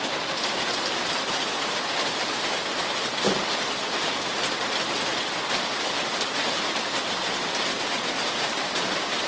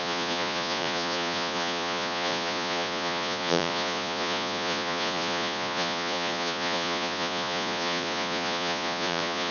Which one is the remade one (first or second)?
second